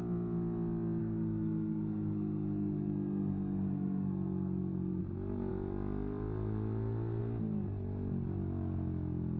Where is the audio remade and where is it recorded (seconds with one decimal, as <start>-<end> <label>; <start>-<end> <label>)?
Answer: 0.0-1.0 recorded; 1.0-5.0 remade; 5.0-9.4 recorded